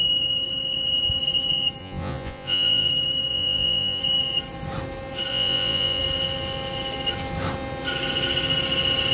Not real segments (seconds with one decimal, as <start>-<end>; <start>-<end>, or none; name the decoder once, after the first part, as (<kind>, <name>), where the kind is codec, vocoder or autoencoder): 1.8-2.9 (vocoder, Vocos); 3.3-4.0; 5.3-6.0

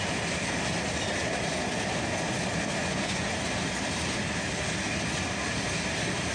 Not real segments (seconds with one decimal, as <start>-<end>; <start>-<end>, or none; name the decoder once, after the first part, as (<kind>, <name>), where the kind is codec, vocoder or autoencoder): 2.8-3.3 (vocoder, Vocos)

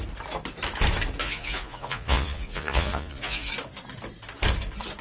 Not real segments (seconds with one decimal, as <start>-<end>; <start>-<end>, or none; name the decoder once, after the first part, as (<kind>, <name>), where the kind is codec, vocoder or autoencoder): 1.2-3.5 (vocoder, Vocos)

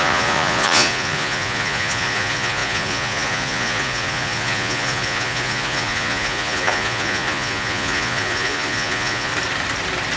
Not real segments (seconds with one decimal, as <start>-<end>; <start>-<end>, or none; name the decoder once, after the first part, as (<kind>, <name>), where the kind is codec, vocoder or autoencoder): 0.0-9.3 (vocoder, Vocos)

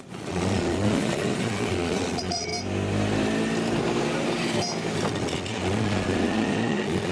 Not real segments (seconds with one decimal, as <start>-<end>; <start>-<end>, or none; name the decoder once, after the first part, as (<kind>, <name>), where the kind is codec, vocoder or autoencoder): 0.0-2.5 (vocoder, Vocos); 5.1-7.1

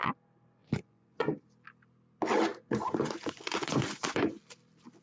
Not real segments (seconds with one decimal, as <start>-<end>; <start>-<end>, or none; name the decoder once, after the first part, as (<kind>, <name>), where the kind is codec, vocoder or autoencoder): 0.6-1.4 (vocoder, Vocos); 2.5-4.4

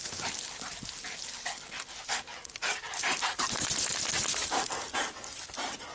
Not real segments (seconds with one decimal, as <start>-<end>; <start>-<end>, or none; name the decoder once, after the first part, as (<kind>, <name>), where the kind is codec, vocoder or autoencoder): none